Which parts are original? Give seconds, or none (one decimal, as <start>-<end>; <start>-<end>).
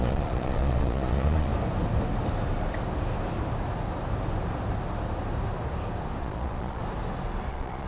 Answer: 1.5-6.2; 6.8-7.5